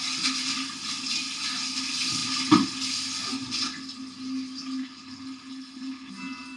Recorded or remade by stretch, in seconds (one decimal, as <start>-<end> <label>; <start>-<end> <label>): 0.0-4.8 recorded; 4.8-6.1 remade; 6.1-6.6 recorded